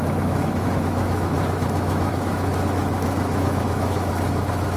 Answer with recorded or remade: remade